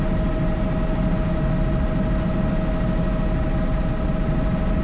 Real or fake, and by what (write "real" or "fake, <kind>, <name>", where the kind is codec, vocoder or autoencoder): real